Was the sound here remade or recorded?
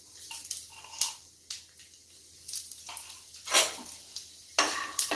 recorded